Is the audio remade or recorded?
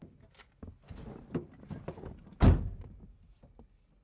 recorded